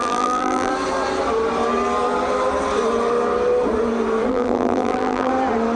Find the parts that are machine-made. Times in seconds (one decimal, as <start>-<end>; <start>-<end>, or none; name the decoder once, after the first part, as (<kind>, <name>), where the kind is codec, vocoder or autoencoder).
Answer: 0.0-0.7 (vocoder, BigVGAN v2); 4.3-5.3